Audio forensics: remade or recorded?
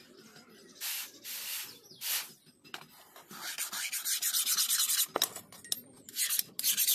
recorded